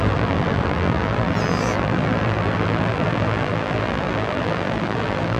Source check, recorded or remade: remade